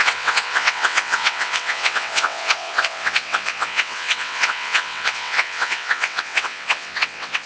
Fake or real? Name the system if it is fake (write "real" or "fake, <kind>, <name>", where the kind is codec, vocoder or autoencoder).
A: fake, vocoder, WaveNeXt